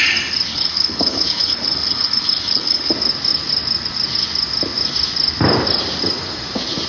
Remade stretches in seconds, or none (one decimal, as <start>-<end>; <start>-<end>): 0.5-2.9